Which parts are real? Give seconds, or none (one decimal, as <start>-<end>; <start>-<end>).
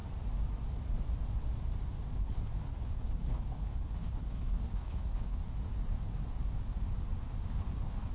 0.0-2.2; 5.4-7.5